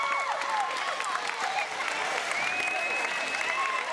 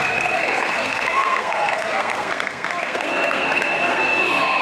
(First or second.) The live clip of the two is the first